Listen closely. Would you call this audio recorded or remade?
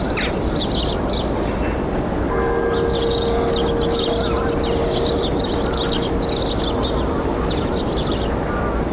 recorded